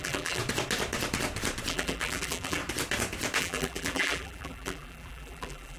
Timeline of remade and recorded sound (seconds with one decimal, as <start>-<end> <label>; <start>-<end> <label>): 0.0-0.4 remade; 0.4-1.7 recorded; 1.7-2.6 remade; 2.6-3.4 recorded; 3.4-5.8 remade